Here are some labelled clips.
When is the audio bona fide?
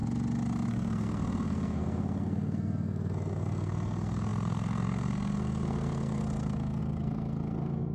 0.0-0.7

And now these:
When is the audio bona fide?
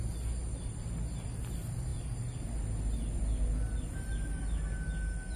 0.0-5.4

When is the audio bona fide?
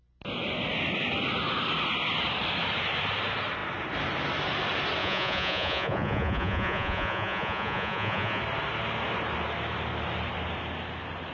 0.0-5.0; 8.4-11.3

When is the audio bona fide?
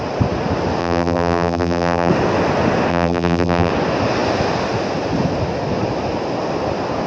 0.0-0.8; 2.1-2.9; 3.7-7.1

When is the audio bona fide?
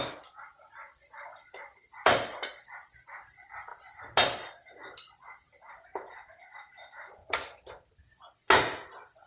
3.7-6.6; 7.2-7.9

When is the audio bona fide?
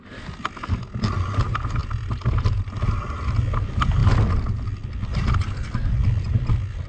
0.0-6.9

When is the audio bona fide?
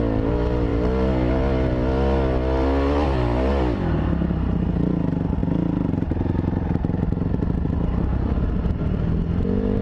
0.0-9.8